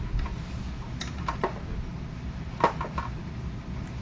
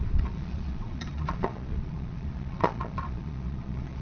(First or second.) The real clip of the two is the first